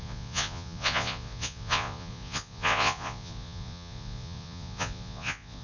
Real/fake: fake